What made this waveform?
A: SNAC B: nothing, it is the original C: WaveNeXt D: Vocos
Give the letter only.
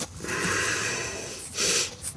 B